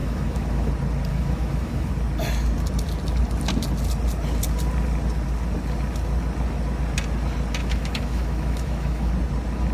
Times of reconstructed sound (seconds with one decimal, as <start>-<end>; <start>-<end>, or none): 0.0-0.7; 1.1-1.9; 7.6-9.1